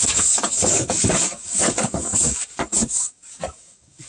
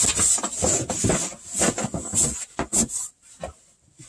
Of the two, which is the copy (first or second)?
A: first